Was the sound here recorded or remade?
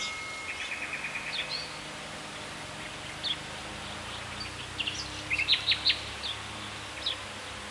recorded